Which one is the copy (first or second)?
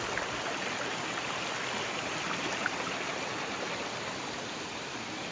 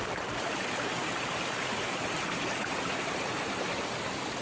second